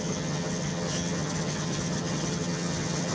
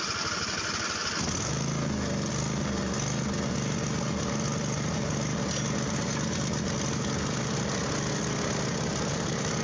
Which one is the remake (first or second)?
first